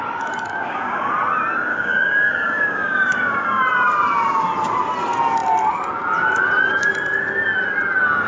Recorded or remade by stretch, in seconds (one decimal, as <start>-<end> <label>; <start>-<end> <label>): 0.0-0.5 recorded; 0.5-1.1 remade; 1.1-1.7 recorded; 1.7-3.6 remade; 3.6-8.3 recorded